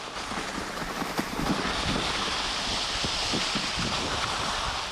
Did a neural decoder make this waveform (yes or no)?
no